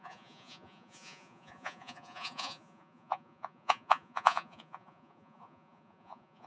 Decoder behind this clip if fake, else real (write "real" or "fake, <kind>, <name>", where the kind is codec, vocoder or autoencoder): fake, vocoder, Vocos